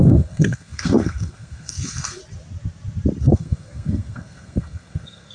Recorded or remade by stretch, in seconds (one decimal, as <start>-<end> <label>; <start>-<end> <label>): 0.0-2.2 remade; 2.2-3.2 recorded; 3.2-5.3 remade